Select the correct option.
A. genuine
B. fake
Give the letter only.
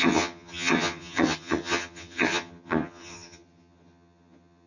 B